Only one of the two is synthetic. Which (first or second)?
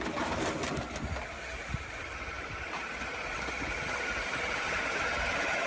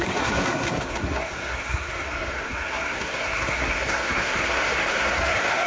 second